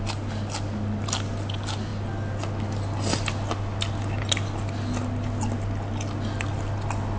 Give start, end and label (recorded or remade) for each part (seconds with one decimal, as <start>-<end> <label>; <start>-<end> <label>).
0.0-7.2 recorded